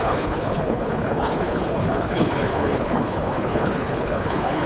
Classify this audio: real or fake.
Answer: fake